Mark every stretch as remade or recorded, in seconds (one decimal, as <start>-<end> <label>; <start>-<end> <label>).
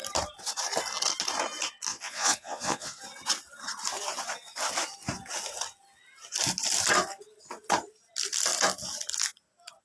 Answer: 0.0-1.9 recorded; 1.9-3.0 remade; 3.0-9.8 recorded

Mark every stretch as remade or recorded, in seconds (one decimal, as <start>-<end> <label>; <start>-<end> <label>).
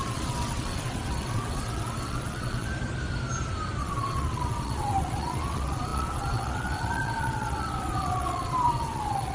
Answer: 0.0-2.7 remade; 2.7-3.8 recorded; 3.8-9.3 remade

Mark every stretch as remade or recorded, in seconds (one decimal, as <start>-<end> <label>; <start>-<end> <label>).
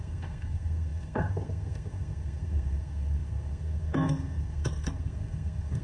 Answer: 0.0-5.8 remade